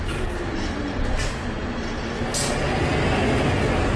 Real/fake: real